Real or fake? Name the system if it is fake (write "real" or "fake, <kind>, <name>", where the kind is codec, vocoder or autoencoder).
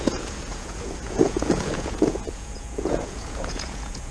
fake, vocoder, Vocos